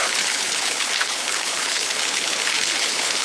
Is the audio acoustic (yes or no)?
no